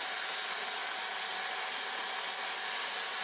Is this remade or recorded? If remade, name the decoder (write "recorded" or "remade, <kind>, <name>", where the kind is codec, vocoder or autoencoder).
recorded